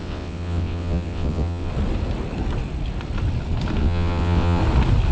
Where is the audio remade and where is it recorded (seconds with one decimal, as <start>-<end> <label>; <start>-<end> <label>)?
0.0-1.7 remade; 1.7-3.8 recorded; 3.8-4.6 remade; 4.6-5.1 recorded